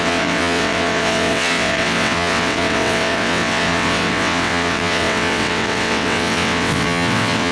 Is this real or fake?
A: fake